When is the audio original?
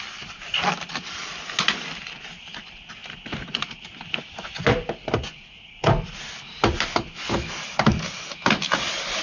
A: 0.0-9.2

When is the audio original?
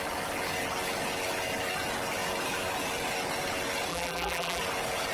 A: 0.0-3.9; 4.6-5.1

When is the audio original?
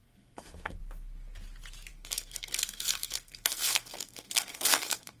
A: 0.8-1.9